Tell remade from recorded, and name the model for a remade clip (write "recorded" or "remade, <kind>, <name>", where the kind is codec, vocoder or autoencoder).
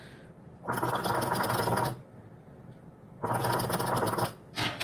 recorded